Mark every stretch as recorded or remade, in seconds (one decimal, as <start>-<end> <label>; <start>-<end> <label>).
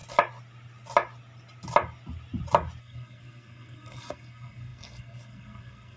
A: 0.0-2.8 recorded; 2.8-6.0 remade